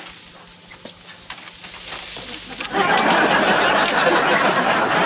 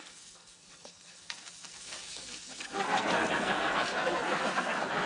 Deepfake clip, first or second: second